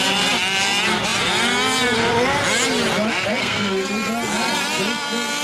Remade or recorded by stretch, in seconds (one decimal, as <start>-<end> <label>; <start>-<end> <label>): 0.0-3.4 recorded; 3.4-3.9 remade; 3.9-5.4 recorded